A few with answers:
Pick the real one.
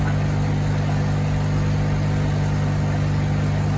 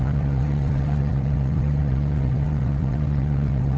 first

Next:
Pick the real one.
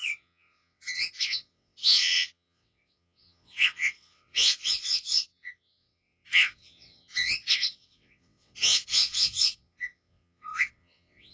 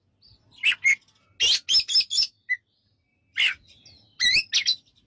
second